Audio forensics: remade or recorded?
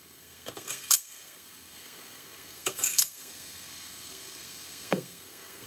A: remade